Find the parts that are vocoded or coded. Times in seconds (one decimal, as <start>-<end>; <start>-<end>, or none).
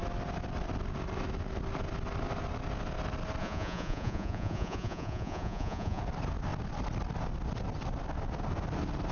3.4-6.0